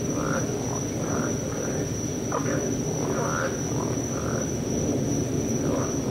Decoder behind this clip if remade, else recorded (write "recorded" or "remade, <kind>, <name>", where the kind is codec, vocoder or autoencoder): recorded